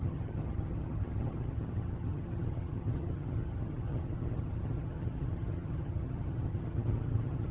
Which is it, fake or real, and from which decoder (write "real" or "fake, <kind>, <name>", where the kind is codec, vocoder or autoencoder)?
fake, vocoder, HiFi-GAN